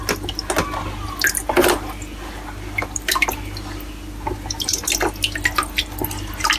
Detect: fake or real real